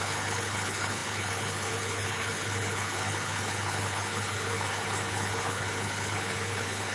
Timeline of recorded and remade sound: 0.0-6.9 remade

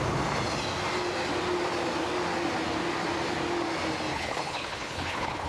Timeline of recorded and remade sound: 0.0-4.1 recorded; 4.1-5.5 remade

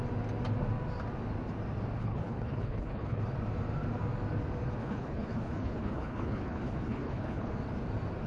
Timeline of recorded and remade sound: 0.0-2.0 recorded; 2.0-3.2 remade; 3.2-4.8 recorded; 4.8-7.5 remade; 7.5-8.3 recorded

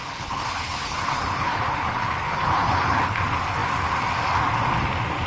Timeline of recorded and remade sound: 0.0-3.2 remade; 3.2-5.3 recorded

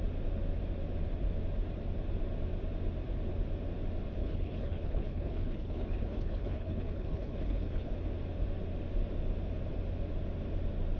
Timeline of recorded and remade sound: 0.0-4.2 recorded; 4.2-7.9 remade; 7.9-11.0 recorded

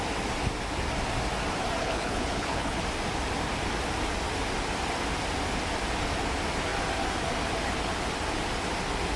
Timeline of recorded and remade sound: 0.0-1.8 recorded; 1.8-2.8 remade; 2.8-9.2 recorded